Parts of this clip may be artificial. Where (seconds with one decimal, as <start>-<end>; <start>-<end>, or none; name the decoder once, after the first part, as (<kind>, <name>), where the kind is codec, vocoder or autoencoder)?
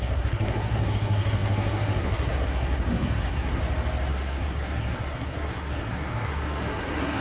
0.0-3.6 (codec, SNAC); 4.1-7.2